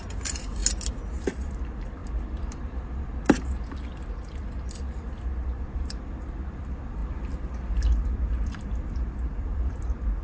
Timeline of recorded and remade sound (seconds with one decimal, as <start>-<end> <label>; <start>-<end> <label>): 0.0-0.6 remade; 0.6-1.2 recorded; 1.2-10.2 remade